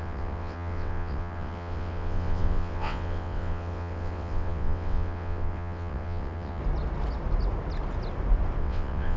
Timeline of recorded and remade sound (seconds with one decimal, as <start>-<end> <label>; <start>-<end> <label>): 0.0-6.6 remade; 6.6-8.6 recorded; 8.6-9.2 remade